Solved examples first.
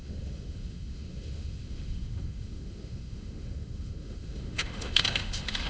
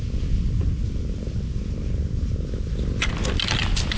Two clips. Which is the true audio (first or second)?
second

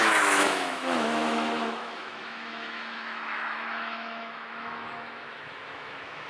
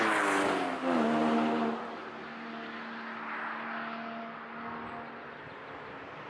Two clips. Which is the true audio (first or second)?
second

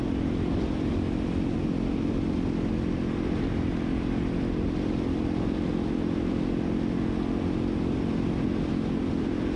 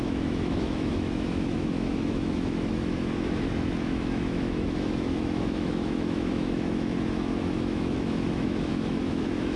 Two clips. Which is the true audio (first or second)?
first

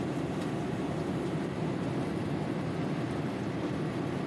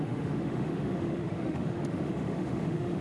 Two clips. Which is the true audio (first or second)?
first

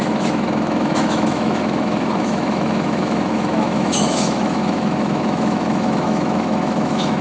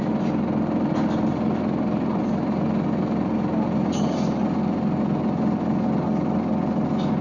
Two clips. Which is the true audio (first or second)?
second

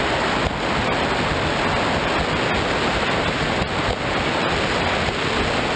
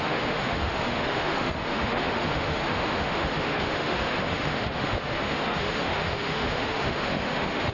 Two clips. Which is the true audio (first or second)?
first